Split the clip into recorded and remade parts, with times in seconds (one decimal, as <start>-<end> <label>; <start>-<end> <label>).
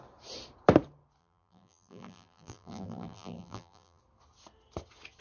0.0-1.2 recorded; 1.2-4.0 remade; 4.0-5.2 recorded